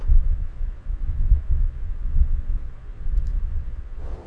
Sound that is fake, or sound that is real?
fake